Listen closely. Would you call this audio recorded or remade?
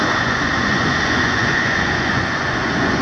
remade